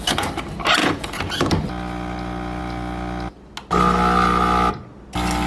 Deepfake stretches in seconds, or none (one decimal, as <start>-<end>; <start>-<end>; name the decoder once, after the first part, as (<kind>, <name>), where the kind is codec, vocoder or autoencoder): 0.8-1.5 (vocoder, Vocos)